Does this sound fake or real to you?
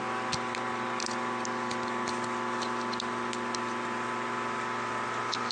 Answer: real